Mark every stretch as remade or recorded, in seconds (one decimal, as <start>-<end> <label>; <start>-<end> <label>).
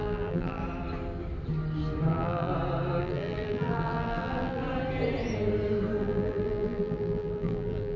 0.0-0.6 remade; 0.6-2.1 recorded; 2.1-2.5 remade; 2.5-3.0 recorded; 3.0-4.6 remade; 4.6-6.0 recorded; 6.0-8.0 remade